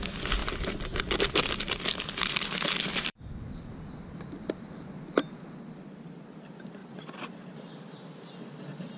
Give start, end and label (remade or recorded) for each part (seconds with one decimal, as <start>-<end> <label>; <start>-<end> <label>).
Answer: 0.0-0.4 recorded; 0.4-5.1 remade; 5.1-6.8 recorded; 6.8-8.6 remade; 8.6-9.0 recorded